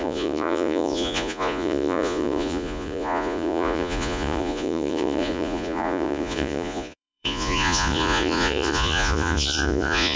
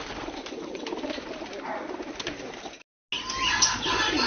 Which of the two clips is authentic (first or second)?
second